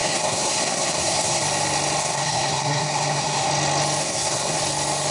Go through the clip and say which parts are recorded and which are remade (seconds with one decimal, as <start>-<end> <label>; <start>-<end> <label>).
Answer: 0.0-1.4 remade; 1.4-2.0 recorded; 2.0-3.5 remade; 3.5-4.0 recorded; 4.0-4.6 remade; 4.6-5.1 recorded